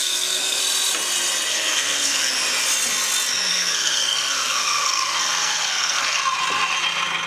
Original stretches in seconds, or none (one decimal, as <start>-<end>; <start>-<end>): 0.6-1.5; 2.3-3.5; 6.2-7.3